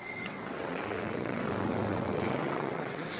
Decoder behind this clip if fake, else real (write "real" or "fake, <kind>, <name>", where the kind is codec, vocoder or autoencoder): fake, vocoder, WaveNeXt